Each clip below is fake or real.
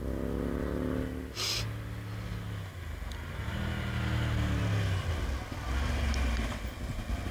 real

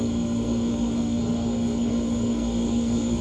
fake